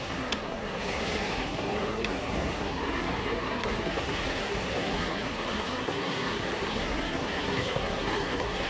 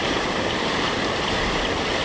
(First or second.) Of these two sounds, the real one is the second